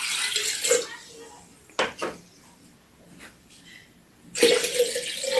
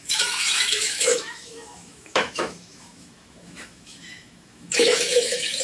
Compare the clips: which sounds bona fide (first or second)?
first